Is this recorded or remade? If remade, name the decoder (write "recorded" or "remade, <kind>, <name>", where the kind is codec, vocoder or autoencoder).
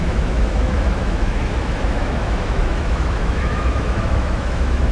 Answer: remade, autoencoder, DAC-VAE